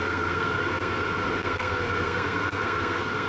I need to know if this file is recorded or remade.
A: remade